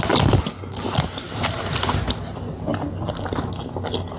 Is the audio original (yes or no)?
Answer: yes